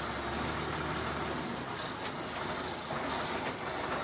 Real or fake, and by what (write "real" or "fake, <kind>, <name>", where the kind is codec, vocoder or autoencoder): real